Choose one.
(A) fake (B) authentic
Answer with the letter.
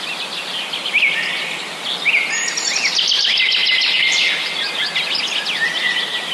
B